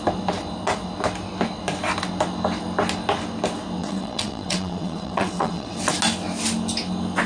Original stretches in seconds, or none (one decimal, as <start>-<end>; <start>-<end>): 0.0-3.8; 5.8-7.3